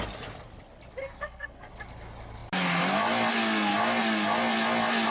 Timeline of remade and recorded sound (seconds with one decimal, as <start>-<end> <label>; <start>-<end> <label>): 0.0-1.0 recorded; 1.0-1.7 remade; 1.7-5.1 recorded